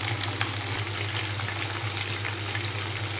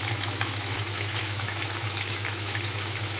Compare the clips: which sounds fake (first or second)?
second